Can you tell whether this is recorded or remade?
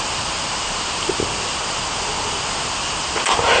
recorded